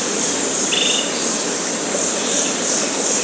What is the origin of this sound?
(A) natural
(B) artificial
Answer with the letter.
A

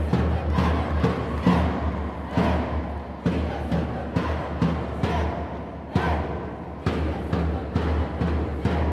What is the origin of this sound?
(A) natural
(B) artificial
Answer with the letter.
A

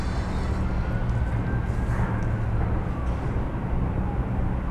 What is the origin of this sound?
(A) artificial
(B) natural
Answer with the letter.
B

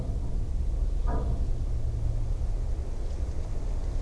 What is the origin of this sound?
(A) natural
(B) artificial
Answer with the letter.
A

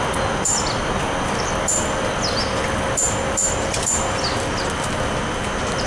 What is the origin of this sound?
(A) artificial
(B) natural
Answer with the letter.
B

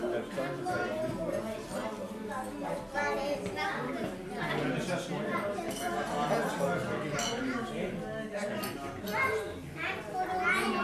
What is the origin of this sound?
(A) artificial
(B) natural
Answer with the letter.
B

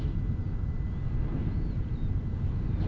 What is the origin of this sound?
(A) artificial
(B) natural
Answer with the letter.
B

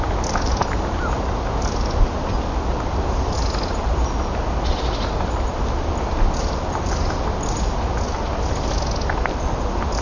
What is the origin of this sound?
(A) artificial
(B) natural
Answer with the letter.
B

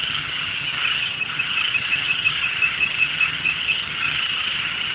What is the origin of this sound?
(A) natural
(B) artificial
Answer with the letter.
B